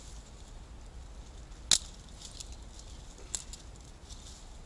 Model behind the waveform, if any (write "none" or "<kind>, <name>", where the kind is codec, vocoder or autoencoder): none